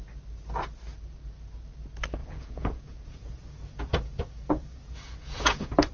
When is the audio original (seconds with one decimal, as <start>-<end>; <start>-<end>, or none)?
0.0-2.2